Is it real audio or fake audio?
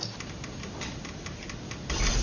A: real